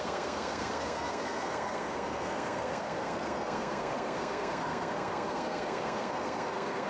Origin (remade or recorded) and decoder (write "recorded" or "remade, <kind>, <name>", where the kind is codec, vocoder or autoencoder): remade, codec, SNAC